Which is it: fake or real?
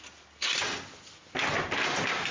real